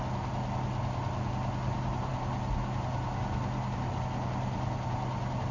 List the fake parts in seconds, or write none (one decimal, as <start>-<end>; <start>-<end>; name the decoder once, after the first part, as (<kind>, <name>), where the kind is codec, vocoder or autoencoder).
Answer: none